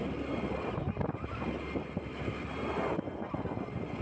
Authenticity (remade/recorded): recorded